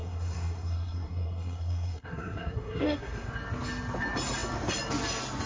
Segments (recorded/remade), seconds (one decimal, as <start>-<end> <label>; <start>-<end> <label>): 0.0-3.3 remade; 3.3-5.5 recorded